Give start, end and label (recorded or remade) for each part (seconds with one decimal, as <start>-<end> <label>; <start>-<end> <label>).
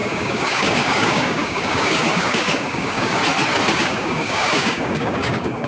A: 0.0-3.2 remade; 3.2-3.7 recorded; 3.7-5.7 remade